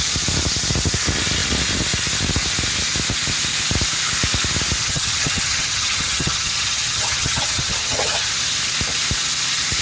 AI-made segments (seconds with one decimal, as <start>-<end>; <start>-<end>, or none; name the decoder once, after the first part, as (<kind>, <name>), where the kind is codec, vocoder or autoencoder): 4.8-8.3 (vocoder, HiFi-GAN)